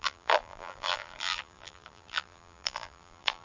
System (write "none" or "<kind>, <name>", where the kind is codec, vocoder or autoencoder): vocoder, BigVGAN v2